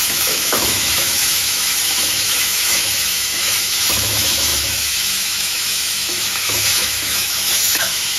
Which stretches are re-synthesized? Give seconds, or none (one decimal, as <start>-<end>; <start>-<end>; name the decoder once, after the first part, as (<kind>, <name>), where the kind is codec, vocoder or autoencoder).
0.0-8.2 (autoencoder, DAC-VAE)